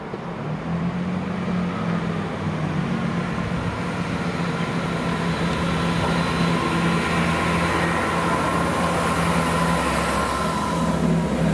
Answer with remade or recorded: recorded